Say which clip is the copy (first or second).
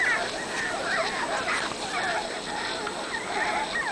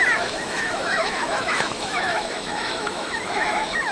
second